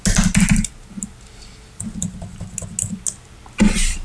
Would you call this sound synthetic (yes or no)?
no